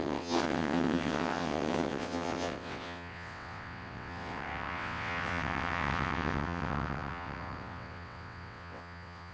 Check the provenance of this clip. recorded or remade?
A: remade